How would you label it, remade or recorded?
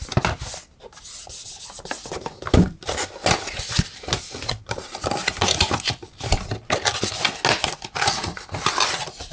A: recorded